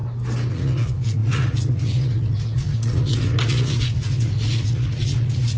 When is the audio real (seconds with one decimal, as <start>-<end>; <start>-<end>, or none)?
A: 0.0-0.5